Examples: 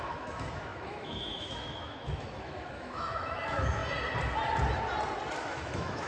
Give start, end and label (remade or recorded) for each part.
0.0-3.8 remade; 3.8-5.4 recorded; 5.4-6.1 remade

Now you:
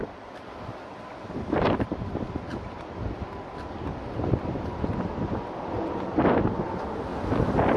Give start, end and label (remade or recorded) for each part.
0.0-2.9 remade; 2.9-3.9 recorded; 3.9-6.4 remade; 6.4-7.1 recorded; 7.1-7.8 remade

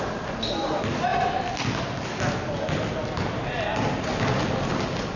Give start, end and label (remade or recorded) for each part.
0.0-5.2 recorded

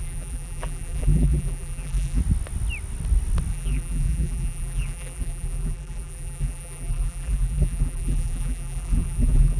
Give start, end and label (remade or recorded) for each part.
0.0-2.2 remade; 2.2-3.5 recorded; 3.5-9.6 remade

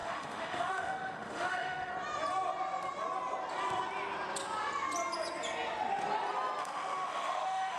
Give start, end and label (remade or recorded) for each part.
0.0-1.9 remade; 1.9-6.6 recorded; 6.6-7.8 remade

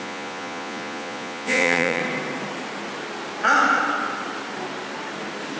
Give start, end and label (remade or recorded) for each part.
0.0-2.0 remade; 2.0-5.6 recorded

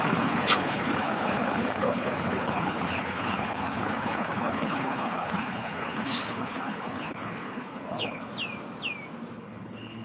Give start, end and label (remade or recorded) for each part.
0.0-8.3 remade; 8.3-9.3 recorded; 9.3-10.0 remade

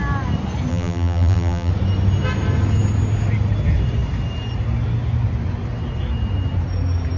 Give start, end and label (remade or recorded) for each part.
0.0-0.7 recorded; 0.7-1.7 remade; 1.7-7.2 recorded